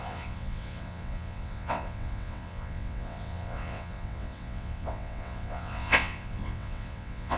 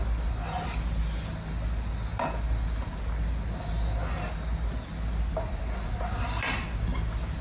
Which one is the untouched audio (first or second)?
second